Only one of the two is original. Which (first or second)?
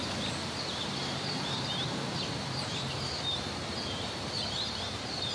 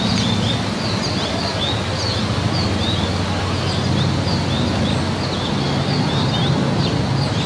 second